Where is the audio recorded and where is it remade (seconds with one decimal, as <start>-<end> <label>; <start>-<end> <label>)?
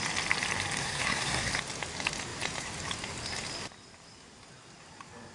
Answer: 0.0-0.8 recorded; 0.8-1.5 remade; 1.5-5.3 recorded